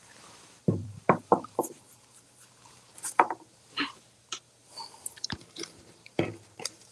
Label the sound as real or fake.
fake